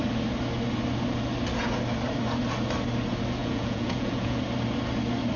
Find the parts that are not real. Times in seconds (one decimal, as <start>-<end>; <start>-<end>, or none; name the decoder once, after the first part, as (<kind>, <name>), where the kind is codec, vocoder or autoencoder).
3.4-4.4 (vocoder, Vocos)

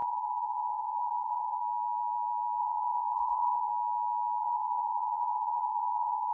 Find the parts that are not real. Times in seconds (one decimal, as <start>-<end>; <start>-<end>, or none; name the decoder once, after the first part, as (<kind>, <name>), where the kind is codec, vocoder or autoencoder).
0.0-1.6 (vocoder, Vocos); 2.6-3.7; 4.4-6.3

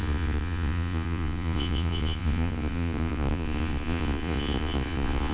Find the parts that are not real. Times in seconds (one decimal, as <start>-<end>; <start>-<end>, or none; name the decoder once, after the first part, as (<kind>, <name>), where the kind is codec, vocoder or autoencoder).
0.0-5.3 (vocoder, Vocos)

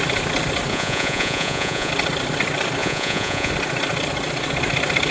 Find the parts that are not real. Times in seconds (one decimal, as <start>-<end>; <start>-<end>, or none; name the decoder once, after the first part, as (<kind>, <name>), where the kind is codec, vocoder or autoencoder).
0.7-1.9 (vocoder, Vocos); 2.8-3.5

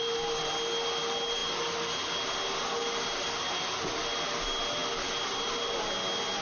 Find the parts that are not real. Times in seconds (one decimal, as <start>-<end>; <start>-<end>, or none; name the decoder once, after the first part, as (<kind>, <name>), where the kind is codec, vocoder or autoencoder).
none

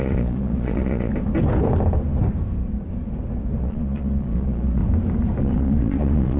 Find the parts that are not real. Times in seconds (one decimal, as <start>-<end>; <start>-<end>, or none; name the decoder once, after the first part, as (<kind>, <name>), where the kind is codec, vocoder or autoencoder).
0.0-1.1 (vocoder, Vocos); 3.6-4.8; 5.4-6.4

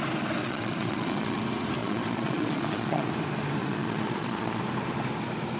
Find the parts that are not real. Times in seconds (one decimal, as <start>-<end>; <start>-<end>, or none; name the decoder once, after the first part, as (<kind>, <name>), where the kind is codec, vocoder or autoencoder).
0.4-1.4 (vocoder, Vocos); 1.8-3.1; 3.6-4.6

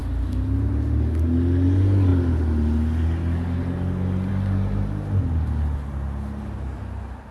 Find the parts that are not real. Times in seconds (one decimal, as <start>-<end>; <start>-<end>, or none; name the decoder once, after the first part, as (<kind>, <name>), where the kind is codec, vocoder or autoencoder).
none